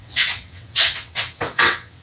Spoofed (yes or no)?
yes